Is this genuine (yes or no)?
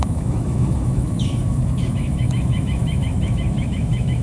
no